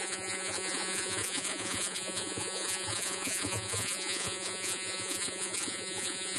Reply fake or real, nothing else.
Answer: fake